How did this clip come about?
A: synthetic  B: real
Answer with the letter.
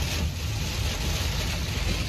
B